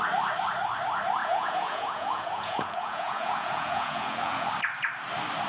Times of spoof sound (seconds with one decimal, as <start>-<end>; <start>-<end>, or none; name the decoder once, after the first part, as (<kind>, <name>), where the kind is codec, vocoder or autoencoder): 1.2-4.5 (vocoder, Vocos)